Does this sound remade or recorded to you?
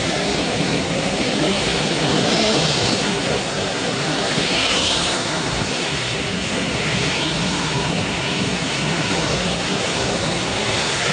remade